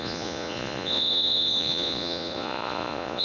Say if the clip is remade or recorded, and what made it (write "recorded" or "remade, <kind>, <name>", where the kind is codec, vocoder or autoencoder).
remade, vocoder, Vocos